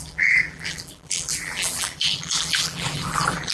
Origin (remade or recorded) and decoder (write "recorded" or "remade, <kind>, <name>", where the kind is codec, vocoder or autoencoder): remade, vocoder, BigVGAN v2